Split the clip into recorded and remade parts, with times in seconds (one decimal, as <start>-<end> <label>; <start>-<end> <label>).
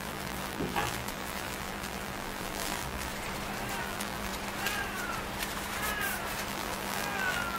0.0-3.1 remade; 3.1-3.8 recorded; 3.8-4.3 remade; 4.3-6.5 recorded; 6.5-7.6 remade